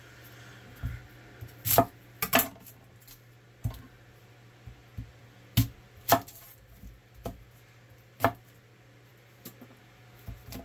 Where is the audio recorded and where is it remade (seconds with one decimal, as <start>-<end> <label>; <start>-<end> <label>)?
0.0-10.6 recorded